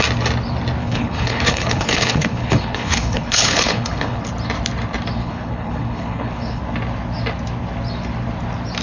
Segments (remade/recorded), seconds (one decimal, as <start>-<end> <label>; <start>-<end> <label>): 0.0-0.8 recorded; 0.8-4.2 remade; 4.2-5.2 recorded; 5.2-6.6 remade; 6.6-8.8 recorded